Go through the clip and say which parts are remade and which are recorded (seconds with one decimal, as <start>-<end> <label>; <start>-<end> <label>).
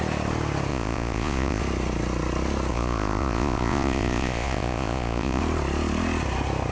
0.0-0.7 recorded; 0.7-1.6 remade; 1.6-2.7 recorded; 2.7-5.4 remade; 5.4-6.7 recorded